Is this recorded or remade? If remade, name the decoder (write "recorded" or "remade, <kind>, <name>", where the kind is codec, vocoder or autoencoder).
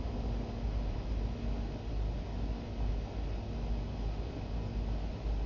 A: recorded